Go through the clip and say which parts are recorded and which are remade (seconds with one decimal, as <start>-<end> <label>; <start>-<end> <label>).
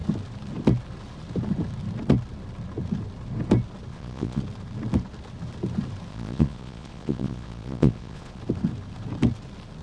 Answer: 0.0-3.9 recorded; 3.9-4.4 remade; 4.4-6.1 recorded; 6.1-8.4 remade; 8.4-9.8 recorded